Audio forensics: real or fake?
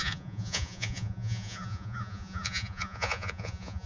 fake